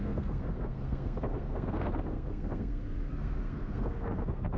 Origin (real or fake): fake